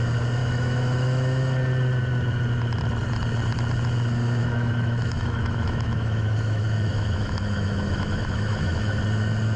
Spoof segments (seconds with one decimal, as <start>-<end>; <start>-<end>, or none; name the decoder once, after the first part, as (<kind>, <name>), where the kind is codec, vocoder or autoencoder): 0.4-1.4 (autoencoder, DAC-VAE); 4.4-9.0